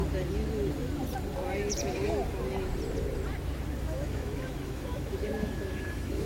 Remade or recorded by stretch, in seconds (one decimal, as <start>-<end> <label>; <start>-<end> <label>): 0.0-3.8 recorded; 3.8-6.3 remade